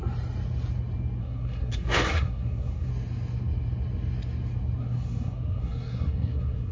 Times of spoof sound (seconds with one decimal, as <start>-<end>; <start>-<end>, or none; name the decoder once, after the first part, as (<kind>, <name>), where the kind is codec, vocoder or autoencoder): 1.2-2.9 (codec, SNAC); 4.8-6.7